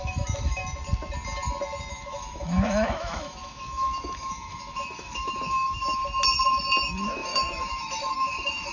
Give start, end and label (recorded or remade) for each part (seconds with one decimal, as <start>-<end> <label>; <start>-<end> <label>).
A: 0.0-0.6 remade; 0.6-1.9 recorded; 1.9-6.0 remade; 6.0-6.8 recorded; 6.8-8.7 remade